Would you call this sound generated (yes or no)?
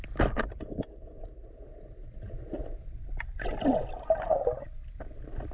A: no